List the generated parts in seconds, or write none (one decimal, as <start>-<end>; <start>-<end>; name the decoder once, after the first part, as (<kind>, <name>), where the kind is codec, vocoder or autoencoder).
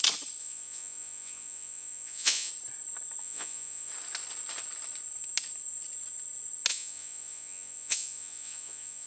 0.4-2.5 (vocoder, Vocos); 3.2-3.9; 6.7-9.1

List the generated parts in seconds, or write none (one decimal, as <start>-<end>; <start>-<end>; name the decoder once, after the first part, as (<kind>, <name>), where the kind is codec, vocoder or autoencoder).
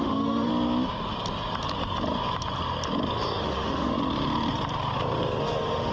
0.0-0.5 (autoencoder, DAC-VAE); 3.4-3.9; 5.4-5.9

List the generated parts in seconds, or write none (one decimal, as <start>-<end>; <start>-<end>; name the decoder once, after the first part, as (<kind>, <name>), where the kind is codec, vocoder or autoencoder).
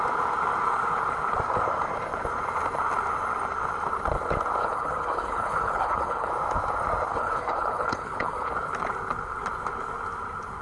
4.6-6.3 (codec, HILCodec); 7.1-8.5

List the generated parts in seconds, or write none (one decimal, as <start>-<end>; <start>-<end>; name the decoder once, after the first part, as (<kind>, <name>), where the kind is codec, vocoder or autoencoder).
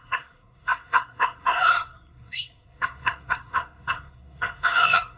0.0-5.2 (codec, SNAC)